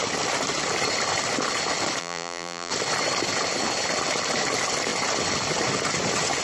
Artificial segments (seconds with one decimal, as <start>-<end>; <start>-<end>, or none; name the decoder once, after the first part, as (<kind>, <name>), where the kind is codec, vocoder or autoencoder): 2.0-2.7 (vocoder, BigVGAN v2)